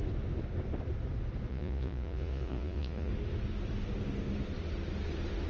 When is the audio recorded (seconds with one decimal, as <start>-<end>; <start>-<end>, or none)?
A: 0.0-1.5; 3.1-5.5